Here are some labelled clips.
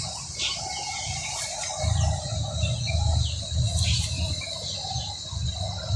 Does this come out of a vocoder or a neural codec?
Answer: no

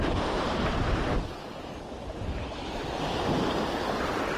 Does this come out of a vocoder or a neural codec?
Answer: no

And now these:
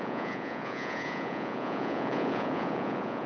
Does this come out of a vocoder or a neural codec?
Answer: yes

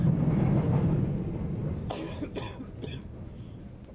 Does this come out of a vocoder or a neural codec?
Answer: no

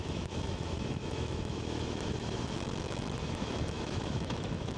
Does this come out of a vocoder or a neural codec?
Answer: yes